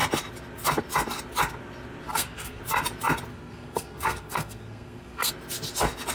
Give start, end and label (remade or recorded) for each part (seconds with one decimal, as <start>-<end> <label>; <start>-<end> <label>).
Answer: 0.0-2.1 recorded; 2.1-2.6 remade; 2.6-3.3 recorded; 3.3-5.3 remade; 5.3-6.1 recorded

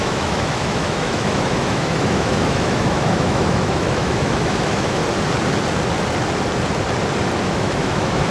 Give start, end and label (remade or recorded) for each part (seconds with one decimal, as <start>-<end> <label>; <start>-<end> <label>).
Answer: 0.0-5.0 remade; 5.0-7.4 recorded; 7.4-8.3 remade